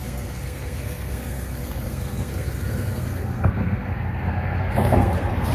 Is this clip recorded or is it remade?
remade